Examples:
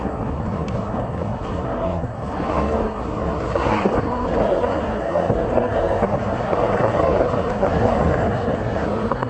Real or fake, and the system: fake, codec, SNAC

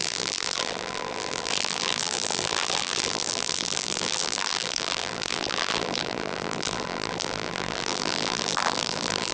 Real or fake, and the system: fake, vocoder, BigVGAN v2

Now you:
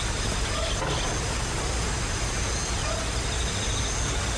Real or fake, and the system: real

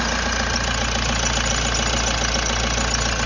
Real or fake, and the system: real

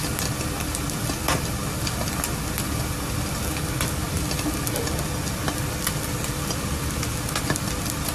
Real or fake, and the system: real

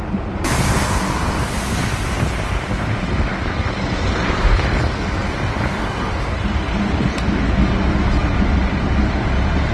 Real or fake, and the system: real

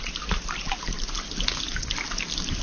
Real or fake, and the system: real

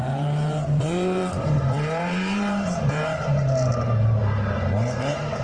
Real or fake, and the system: fake, vocoder, BigVGAN v2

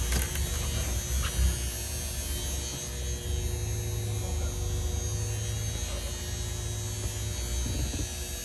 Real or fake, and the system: real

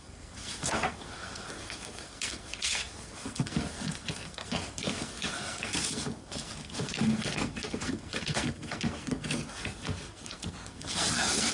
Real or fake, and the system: fake, codec, SNAC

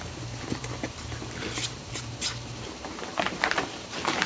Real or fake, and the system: fake, vocoder, BigVGAN v2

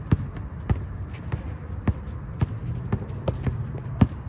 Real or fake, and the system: real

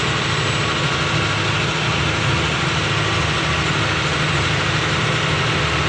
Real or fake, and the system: real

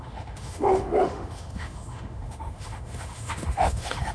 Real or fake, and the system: fake, autoencoder, DAC-VAE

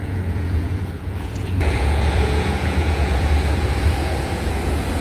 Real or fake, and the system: fake, vocoder, Vocos